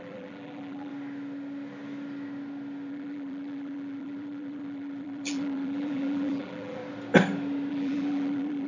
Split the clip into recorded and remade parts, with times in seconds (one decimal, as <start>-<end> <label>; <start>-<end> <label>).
0.0-0.9 remade; 0.9-2.9 recorded; 2.9-6.8 remade; 6.8-7.7 recorded; 7.7-8.7 remade